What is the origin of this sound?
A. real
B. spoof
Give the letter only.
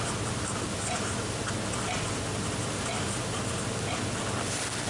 A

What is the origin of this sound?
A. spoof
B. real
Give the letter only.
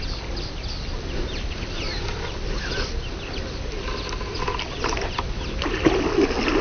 B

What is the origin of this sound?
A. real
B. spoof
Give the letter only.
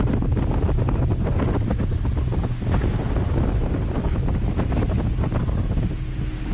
A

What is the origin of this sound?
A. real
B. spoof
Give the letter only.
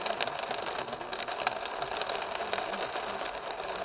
A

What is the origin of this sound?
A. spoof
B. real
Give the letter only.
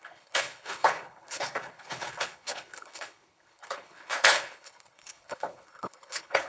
A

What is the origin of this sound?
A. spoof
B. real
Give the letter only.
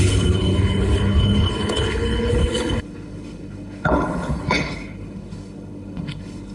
A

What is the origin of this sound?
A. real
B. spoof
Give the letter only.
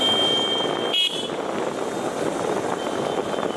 A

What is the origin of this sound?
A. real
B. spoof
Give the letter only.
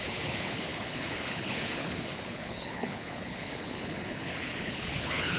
B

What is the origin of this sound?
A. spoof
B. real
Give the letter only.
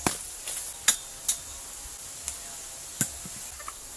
B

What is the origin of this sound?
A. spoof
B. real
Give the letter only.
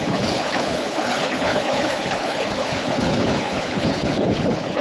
A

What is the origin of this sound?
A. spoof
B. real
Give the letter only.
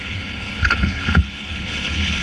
A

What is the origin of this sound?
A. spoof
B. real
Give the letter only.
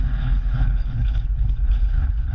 A